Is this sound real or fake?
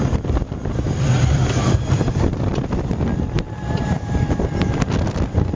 fake